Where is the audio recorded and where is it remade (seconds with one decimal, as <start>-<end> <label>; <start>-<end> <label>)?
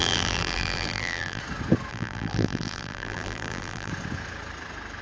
0.0-1.4 remade; 1.4-1.9 recorded; 1.9-3.9 remade; 3.9-5.0 recorded